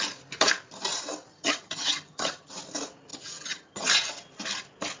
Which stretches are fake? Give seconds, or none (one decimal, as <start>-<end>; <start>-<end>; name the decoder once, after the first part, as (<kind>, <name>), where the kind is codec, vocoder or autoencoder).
1.3-2.5 (vocoder, HiFi-GAN); 3.1-3.8